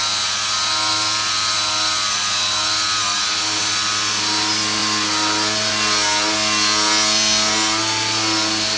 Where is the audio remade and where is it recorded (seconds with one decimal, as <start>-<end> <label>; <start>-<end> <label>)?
0.0-8.8 recorded